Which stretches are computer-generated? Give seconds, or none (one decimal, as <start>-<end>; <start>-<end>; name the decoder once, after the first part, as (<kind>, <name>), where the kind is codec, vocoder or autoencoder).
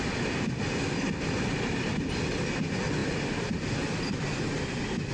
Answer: none